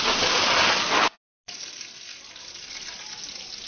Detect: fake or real real